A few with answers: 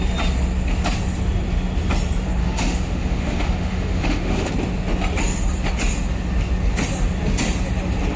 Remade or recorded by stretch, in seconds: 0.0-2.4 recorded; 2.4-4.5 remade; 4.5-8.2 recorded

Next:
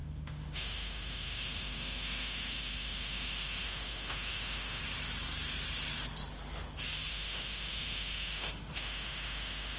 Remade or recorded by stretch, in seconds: 0.0-4.8 remade; 4.8-7.1 recorded; 7.1-9.8 remade